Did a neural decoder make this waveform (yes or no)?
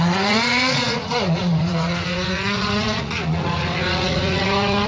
yes